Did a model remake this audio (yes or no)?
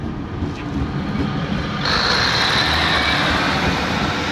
no